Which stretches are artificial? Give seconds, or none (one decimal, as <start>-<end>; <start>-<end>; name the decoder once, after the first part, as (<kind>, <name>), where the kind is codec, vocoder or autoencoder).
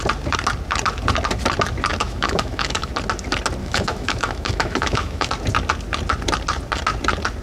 1.9-2.9 (autoencoder, DAC-VAE); 3.6-5.3